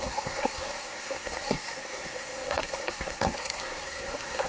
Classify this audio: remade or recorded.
remade